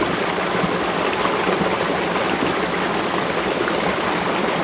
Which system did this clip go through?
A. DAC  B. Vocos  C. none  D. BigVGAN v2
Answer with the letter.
C